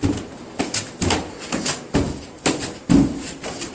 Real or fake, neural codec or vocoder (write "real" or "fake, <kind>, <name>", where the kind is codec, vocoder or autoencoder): real